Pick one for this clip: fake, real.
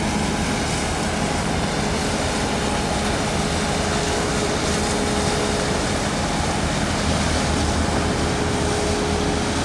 real